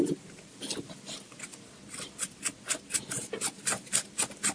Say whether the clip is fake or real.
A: real